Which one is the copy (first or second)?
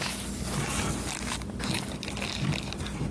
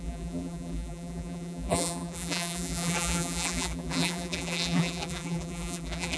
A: second